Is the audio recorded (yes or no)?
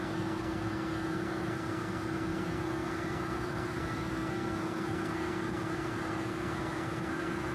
no